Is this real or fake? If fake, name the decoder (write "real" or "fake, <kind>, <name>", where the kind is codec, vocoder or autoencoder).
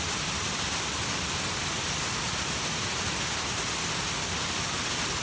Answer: real